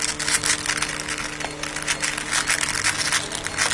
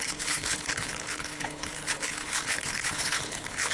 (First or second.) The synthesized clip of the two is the second